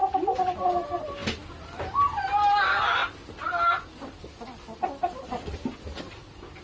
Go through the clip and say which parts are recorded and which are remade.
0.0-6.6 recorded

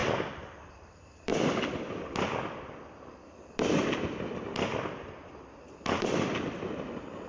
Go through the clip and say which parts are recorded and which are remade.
0.0-0.7 recorded; 0.7-7.3 remade

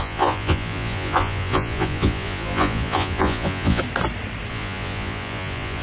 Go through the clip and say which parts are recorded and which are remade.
0.0-3.8 remade; 3.8-4.5 recorded; 4.5-5.8 remade

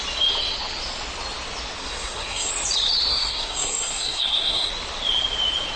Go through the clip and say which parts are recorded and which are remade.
0.0-1.8 recorded; 1.8-2.5 remade; 2.5-3.1 recorded; 3.1-4.7 remade; 4.7-5.8 recorded

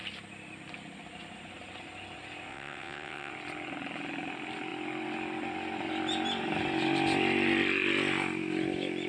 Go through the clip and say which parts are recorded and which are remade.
0.0-2.5 recorded; 2.5-3.3 remade; 3.3-9.1 recorded